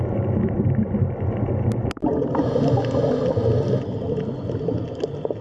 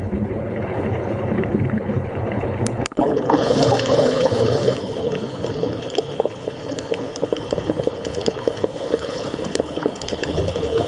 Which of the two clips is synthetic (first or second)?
second